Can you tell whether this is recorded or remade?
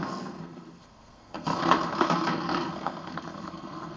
remade